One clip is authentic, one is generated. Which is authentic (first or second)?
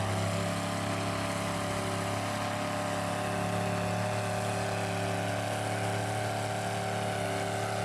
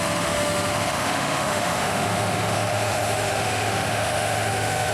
first